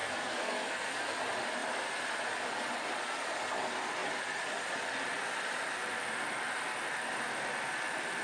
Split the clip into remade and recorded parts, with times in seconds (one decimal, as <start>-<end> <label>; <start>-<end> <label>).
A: 0.0-1.1 remade; 1.1-8.2 recorded